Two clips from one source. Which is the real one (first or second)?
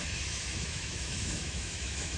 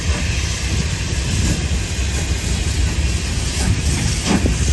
second